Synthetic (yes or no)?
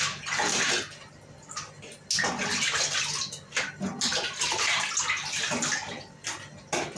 no